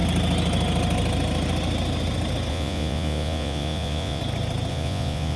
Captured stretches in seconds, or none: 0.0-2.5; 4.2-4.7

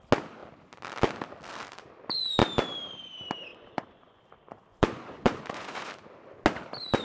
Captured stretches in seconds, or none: 0.0-3.5; 4.2-4.7; 5.9-7.0